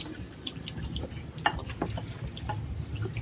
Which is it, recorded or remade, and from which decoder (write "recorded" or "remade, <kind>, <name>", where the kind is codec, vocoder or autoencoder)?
recorded